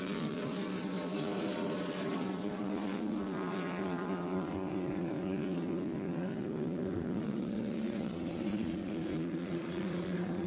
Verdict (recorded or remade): remade